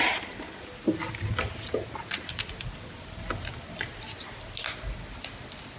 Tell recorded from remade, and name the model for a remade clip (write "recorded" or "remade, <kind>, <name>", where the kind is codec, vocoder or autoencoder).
recorded